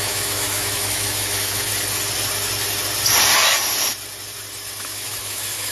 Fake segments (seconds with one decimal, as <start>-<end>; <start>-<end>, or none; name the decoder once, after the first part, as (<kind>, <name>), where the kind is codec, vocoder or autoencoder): 0.0-1.7 (autoencoder, DAC-VAE); 4.8-5.7